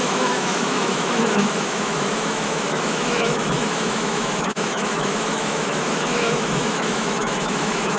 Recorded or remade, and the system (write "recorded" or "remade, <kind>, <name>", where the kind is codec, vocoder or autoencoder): remade, autoencoder, DAC-VAE